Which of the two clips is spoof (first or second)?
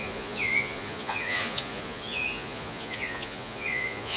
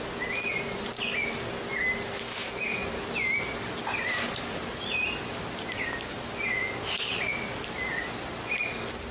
first